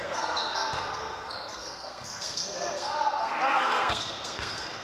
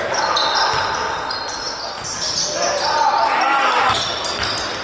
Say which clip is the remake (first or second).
first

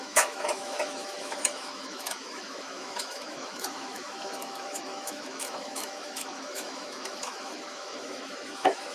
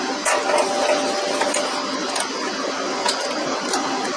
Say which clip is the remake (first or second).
first